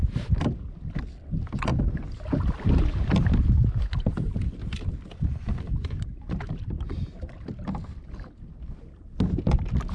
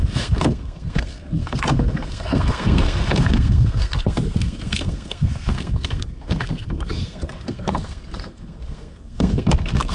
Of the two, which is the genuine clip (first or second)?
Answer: first